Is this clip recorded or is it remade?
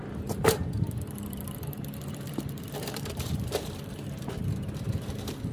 remade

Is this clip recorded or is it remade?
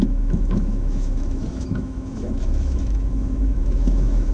remade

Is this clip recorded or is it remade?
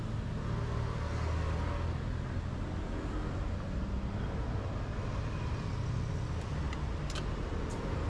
recorded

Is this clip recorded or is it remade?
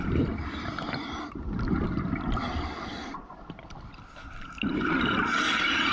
remade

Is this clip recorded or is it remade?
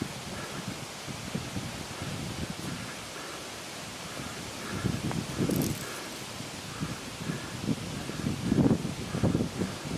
recorded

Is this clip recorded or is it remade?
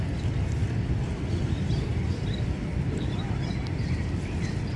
remade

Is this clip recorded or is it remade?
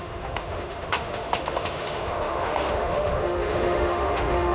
remade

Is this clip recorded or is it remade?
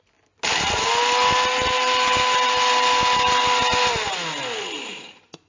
recorded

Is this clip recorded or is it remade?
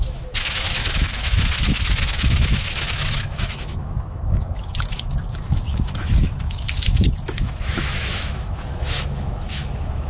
remade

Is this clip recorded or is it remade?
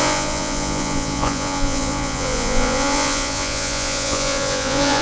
remade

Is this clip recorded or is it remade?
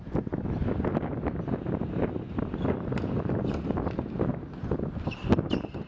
recorded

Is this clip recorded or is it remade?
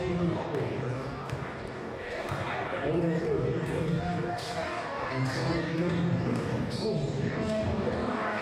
remade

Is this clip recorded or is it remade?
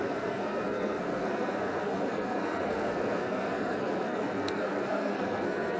remade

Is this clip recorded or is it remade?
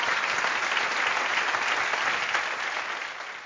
recorded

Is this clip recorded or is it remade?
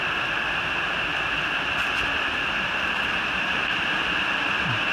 remade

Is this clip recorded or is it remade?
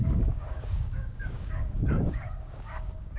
remade